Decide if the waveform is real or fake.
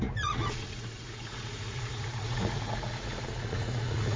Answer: fake